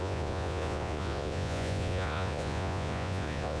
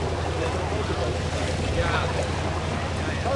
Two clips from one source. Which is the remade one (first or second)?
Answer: first